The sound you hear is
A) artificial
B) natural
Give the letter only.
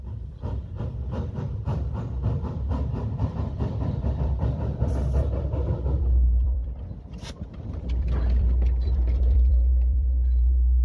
A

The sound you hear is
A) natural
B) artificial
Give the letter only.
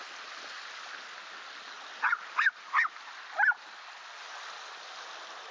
A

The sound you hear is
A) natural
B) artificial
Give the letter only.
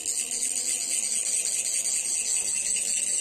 A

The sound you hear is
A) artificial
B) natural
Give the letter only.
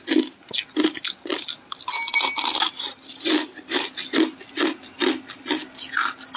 B